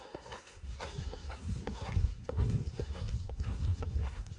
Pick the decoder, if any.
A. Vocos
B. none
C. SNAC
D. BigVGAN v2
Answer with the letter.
C